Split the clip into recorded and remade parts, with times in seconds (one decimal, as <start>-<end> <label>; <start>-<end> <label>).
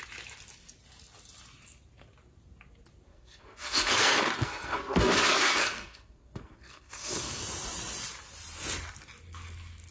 0.0-3.1 recorded; 3.1-7.4 remade; 7.4-9.9 recorded